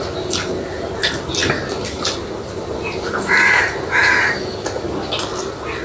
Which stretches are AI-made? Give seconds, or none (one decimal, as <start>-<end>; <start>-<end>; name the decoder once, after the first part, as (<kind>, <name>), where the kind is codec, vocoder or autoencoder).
none

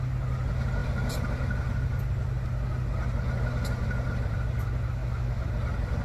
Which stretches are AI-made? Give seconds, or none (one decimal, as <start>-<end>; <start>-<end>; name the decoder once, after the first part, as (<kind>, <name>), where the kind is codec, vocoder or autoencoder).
5.0-5.5 (autoencoder, DAC-VAE)

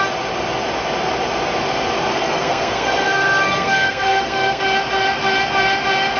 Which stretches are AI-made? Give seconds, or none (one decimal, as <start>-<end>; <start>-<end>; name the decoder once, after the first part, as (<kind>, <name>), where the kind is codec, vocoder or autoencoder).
2.1-4.6 (codec, SNAC)

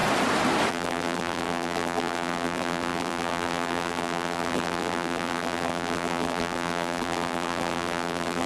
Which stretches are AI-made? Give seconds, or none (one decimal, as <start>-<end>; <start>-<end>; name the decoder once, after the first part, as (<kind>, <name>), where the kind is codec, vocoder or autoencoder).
0.7-8.5 (vocoder, BigVGAN v2)

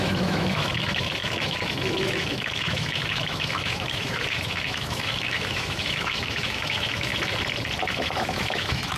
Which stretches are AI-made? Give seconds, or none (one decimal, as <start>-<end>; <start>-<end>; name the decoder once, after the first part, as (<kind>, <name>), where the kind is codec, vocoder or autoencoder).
0.0-7.1 (autoencoder, DAC-VAE); 7.9-9.0

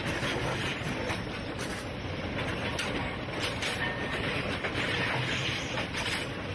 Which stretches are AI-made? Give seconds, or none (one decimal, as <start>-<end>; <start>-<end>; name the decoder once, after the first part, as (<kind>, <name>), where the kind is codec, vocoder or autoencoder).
none